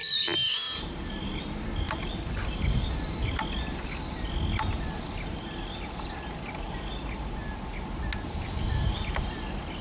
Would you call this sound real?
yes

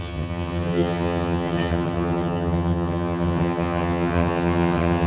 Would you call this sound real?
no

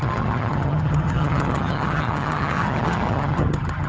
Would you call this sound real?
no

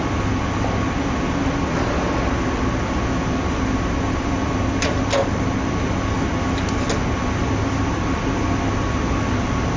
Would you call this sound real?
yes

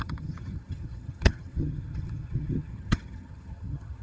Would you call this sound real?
no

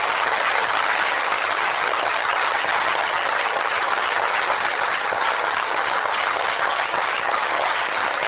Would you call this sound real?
no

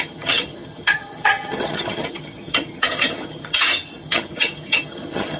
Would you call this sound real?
no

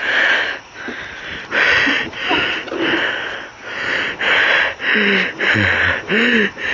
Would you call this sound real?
yes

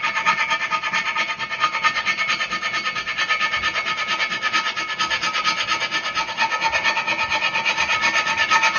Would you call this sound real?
yes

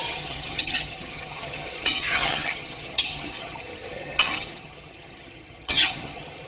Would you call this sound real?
no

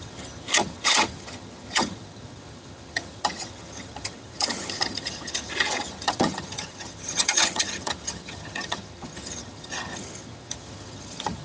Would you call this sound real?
no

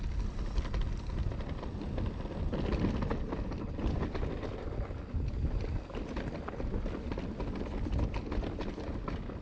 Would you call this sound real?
yes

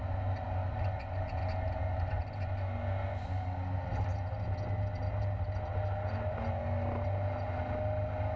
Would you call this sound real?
yes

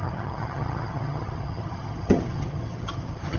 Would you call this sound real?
no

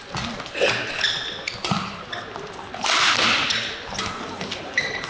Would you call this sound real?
yes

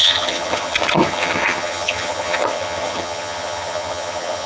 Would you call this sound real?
no